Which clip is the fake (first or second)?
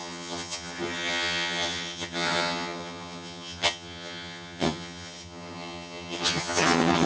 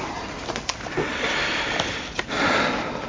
first